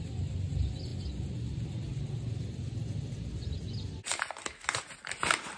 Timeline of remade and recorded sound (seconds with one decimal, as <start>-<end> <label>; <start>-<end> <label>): 0.0-5.6 recorded